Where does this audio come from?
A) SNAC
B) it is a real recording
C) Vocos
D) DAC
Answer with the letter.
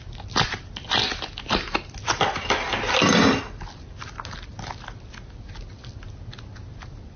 B